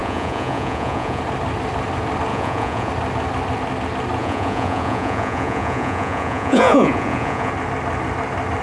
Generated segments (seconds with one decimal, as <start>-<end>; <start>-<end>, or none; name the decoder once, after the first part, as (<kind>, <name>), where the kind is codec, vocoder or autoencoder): 0.0-1.2 (vocoder, Vocos); 2.3-2.9; 4.2-7.5